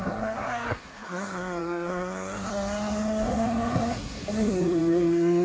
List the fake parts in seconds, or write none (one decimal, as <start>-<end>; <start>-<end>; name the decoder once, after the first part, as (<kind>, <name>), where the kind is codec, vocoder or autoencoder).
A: 0.0-5.4 (codec, SNAC)